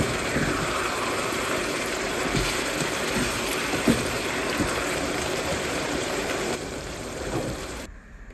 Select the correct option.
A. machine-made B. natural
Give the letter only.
A